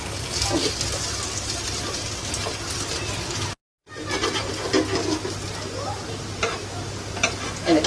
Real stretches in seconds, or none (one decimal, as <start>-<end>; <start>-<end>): 0.0-7.9